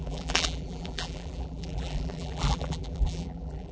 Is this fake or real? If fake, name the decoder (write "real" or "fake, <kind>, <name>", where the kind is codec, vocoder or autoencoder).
fake, vocoder, BigVGAN v2